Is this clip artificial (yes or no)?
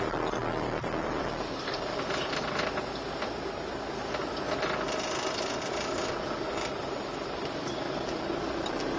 no